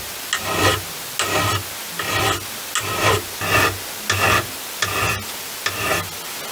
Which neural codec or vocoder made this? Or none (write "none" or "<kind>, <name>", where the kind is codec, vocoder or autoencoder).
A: none